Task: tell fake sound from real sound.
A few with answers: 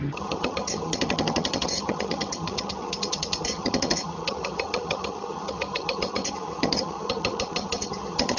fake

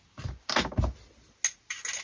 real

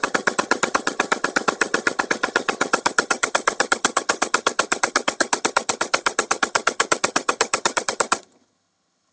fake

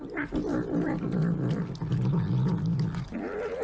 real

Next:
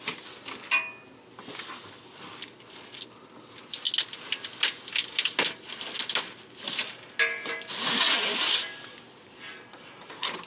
real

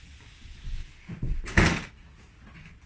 real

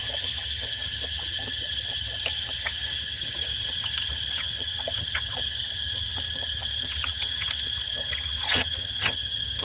fake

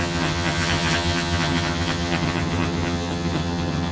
fake